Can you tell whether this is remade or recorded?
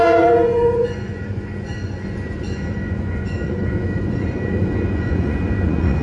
remade